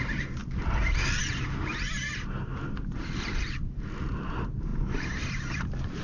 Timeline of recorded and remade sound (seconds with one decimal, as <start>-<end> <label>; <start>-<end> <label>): 0.0-0.4 remade; 0.4-3.2 recorded; 3.2-4.7 remade; 4.7-5.3 recorded; 5.3-6.0 remade